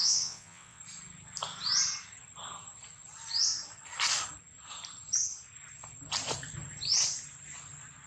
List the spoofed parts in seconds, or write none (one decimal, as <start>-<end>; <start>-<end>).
0.0-0.8